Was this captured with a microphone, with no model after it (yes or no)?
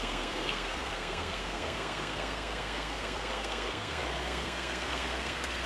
no